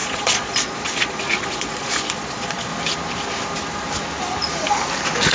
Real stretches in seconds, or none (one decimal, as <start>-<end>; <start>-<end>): 2.7-5.3